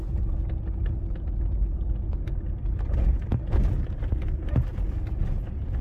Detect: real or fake real